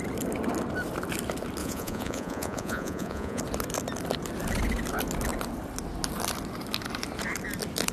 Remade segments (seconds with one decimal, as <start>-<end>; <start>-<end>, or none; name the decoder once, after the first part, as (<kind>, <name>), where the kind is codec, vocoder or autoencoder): 1.6-3.4 (vocoder, Vocos)

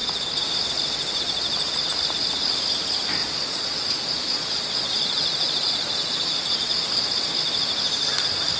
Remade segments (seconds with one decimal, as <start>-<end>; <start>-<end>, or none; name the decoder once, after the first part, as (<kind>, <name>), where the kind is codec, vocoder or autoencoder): 3.2-7.1 (vocoder, Vocos)